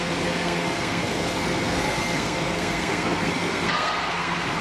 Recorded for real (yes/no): no